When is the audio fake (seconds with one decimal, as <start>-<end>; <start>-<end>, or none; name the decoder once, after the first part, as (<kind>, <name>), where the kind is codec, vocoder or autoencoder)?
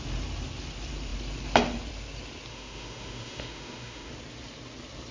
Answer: 2.5-4.1 (autoencoder, DAC-VAE)